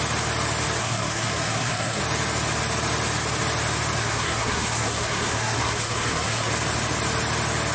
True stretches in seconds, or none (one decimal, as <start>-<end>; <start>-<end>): 0.0-0.8; 2.0-4.0; 6.5-7.7